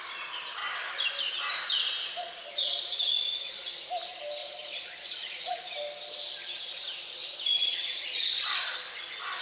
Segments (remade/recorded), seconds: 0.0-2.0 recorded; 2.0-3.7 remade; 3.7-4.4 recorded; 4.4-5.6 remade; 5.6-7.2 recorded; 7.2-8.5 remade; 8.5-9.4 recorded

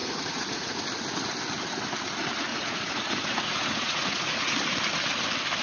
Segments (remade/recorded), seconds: 0.0-0.8 remade; 0.8-2.5 recorded; 2.5-4.5 remade; 4.5-5.6 recorded

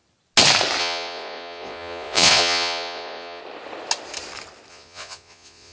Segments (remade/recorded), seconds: 0.0-0.8 recorded; 0.8-3.4 remade; 3.4-4.7 recorded; 4.7-5.7 remade

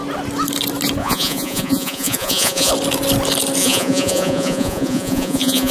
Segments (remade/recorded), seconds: 0.0-1.0 recorded; 1.0-2.7 remade; 2.7-3.6 recorded; 3.6-5.7 remade

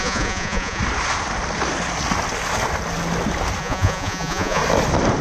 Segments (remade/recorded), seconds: 0.0-0.8 remade; 0.8-3.6 recorded; 3.6-4.6 remade; 4.6-5.2 recorded

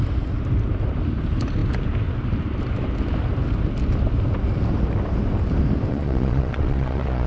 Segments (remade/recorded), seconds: 0.0-5.9 recorded; 5.9-7.3 remade

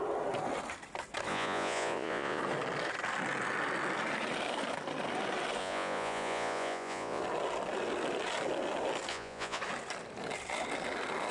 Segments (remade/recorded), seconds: 0.0-1.3 recorded; 1.3-2.4 remade; 2.4-5.6 recorded; 5.6-7.2 remade; 7.2-9.1 recorded; 9.1-9.6 remade; 9.6-11.3 recorded

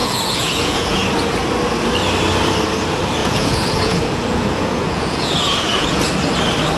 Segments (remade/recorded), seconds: 0.0-1.0 remade; 1.0-3.2 recorded; 3.2-6.0 remade; 6.0-6.8 recorded